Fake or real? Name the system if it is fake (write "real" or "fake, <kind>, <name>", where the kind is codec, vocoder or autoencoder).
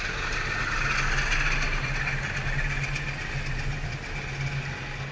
real